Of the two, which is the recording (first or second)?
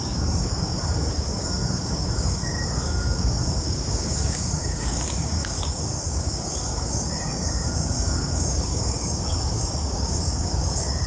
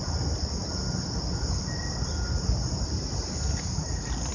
second